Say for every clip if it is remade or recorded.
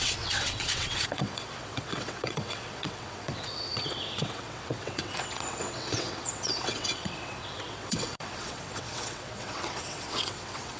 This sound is remade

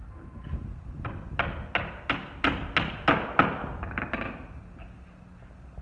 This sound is recorded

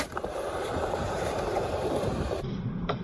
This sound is remade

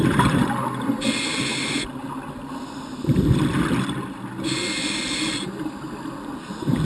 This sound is recorded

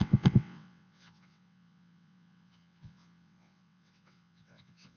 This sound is remade